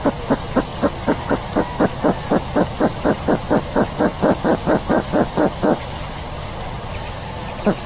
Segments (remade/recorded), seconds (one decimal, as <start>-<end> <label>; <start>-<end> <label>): 0.0-2.3 recorded; 2.3-4.1 remade; 4.1-7.9 recorded